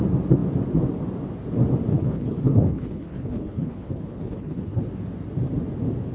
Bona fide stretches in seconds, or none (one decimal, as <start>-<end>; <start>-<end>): 0.0-1.9; 4.8-6.1